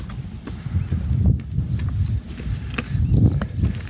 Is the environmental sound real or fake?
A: real